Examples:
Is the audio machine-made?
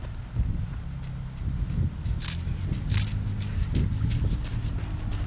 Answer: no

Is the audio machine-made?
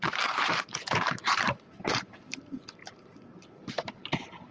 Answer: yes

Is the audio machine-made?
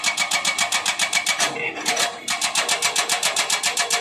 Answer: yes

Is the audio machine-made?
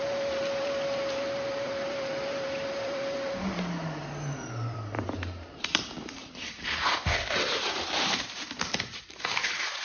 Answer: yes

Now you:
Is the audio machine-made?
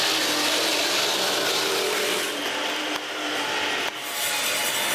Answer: no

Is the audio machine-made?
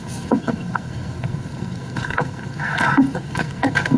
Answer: yes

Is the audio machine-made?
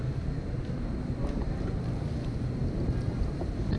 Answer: no